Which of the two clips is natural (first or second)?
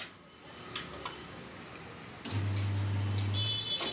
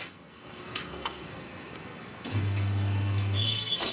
first